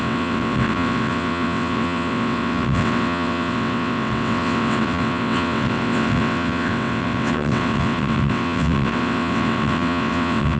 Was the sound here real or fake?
fake